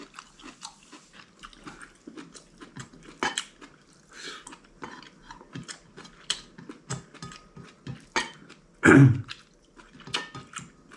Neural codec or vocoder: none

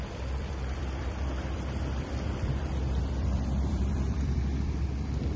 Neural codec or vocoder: vocoder, BigVGAN v2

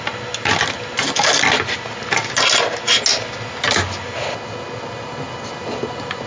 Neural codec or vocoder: none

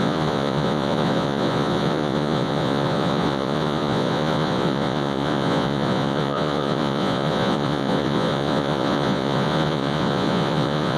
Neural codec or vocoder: vocoder, Vocos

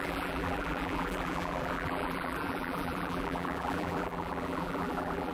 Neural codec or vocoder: vocoder, BigVGAN v2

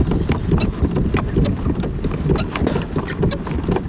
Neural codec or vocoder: none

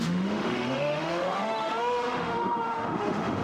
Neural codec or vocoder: autoencoder, DAC-VAE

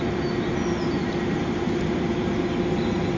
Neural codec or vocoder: none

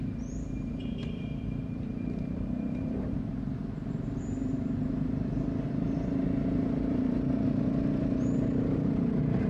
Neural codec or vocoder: vocoder, BigVGAN v2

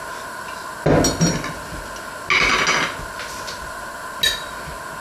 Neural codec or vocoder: none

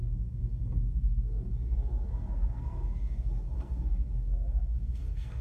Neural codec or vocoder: codec, SNAC